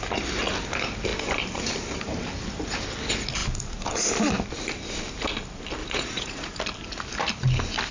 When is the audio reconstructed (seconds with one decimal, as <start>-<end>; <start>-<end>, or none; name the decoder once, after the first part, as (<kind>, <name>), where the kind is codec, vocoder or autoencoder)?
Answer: 5.8-6.6 (vocoder, Vocos)